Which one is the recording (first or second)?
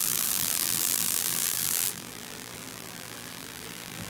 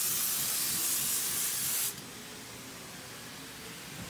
second